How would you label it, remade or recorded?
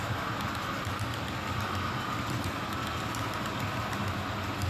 recorded